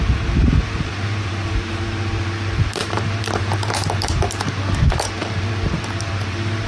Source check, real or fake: fake